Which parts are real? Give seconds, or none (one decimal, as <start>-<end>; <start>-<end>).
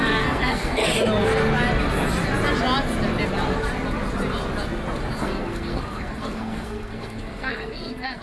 0.8-5.2